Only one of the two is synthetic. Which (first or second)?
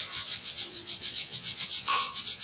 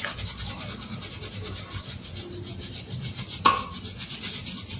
first